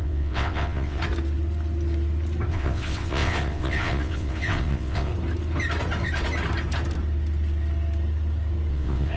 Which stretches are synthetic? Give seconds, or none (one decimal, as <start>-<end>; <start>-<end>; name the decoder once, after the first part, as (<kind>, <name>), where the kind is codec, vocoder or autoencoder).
0.0-1.0 (vocoder, WaveNeXt); 2.5-5.1; 8.7-9.2